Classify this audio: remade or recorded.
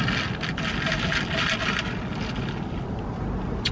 recorded